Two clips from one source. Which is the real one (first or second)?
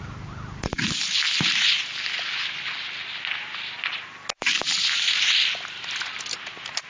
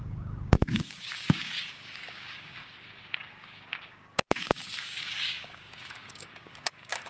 first